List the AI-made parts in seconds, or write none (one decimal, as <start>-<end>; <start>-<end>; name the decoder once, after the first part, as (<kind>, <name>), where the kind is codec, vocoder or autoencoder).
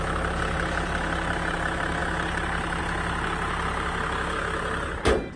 none